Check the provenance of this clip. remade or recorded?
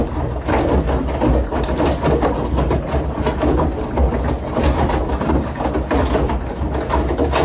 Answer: recorded